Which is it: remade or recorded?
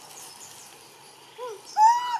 recorded